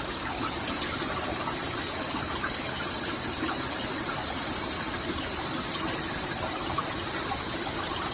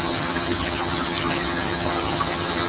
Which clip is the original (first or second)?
first